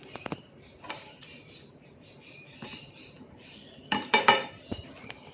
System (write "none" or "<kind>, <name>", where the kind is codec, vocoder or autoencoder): vocoder, BigVGAN v2